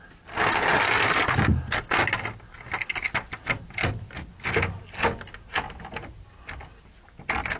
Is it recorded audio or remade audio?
recorded